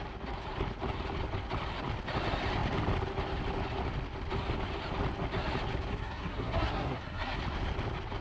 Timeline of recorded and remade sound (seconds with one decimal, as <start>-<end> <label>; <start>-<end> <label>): 0.0-5.9 recorded; 5.9-7.4 remade; 7.4-8.2 recorded

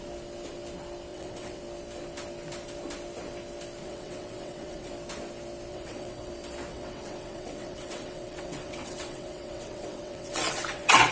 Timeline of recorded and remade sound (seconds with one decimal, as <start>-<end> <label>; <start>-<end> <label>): 0.0-1.1 recorded; 1.1-1.6 remade; 1.6-3.8 recorded; 3.8-4.9 remade; 4.9-5.7 recorded; 5.7-6.3 remade; 6.3-6.7 recorded; 6.7-11.1 remade

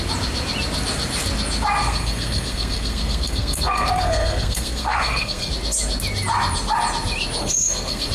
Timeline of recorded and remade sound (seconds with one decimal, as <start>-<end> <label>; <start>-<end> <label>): 0.0-1.8 recorded; 1.8-5.5 remade; 5.5-7.4 recorded; 7.4-8.1 remade

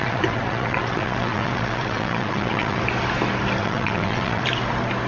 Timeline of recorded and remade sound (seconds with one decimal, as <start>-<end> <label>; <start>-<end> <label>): 0.0-2.8 remade; 2.8-3.6 recorded; 3.6-4.4 remade; 4.4-5.1 recorded

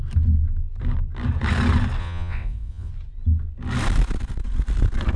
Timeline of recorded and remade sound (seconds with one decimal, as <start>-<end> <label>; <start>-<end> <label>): 0.0-2.0 recorded; 2.0-2.9 remade; 2.9-5.2 recorded

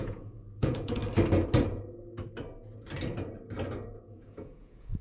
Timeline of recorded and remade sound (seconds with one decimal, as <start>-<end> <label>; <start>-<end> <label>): 0.0-1.0 remade; 1.0-4.0 recorded; 4.0-5.0 remade

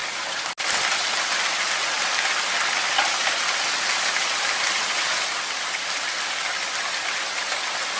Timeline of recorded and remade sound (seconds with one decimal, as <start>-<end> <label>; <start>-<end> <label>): 0.0-8.0 recorded